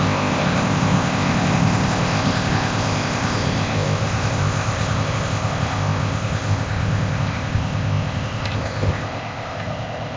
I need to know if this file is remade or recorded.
remade